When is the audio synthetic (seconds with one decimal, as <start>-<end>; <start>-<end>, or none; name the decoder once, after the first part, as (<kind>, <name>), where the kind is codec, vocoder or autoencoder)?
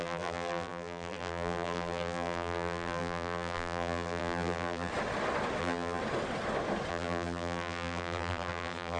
0.0-4.9 (vocoder, BigVGAN v2); 5.6-6.0; 6.9-9.0